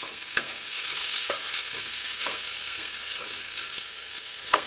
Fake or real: fake